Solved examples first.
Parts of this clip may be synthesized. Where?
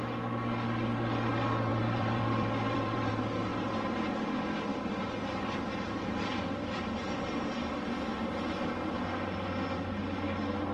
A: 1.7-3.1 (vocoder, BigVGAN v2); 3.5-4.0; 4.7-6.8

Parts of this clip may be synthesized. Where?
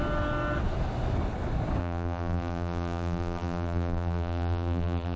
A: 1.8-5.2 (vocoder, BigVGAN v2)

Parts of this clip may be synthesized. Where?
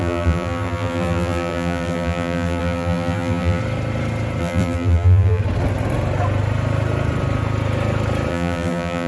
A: 0.0-3.6 (vocoder, BigVGAN v2); 4.4-5.4; 8.3-9.1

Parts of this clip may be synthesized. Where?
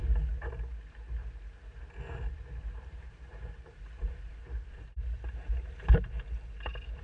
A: 2.6-4.4 (vocoder, BigVGAN v2)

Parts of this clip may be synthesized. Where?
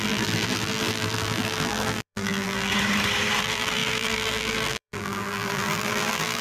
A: 0.0-2.7 (vocoder, BigVGAN v2); 3.4-6.4